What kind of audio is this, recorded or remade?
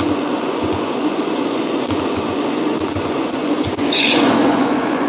remade